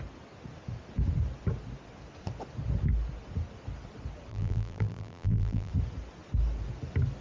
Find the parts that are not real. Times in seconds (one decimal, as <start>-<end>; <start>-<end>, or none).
4.3-5.7

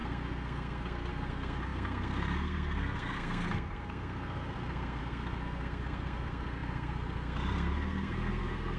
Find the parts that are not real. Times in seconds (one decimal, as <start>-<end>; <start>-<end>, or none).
0.0-8.8

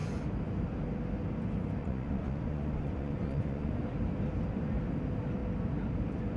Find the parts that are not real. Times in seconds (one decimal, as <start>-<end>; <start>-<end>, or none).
1.8-3.7

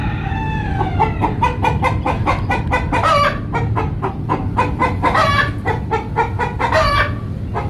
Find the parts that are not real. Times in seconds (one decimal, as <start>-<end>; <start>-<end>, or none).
none